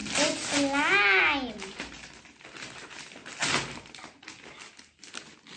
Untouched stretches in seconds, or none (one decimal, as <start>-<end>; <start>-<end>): 0.0-5.6